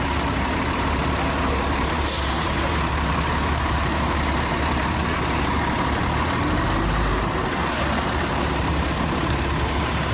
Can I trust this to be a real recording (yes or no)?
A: no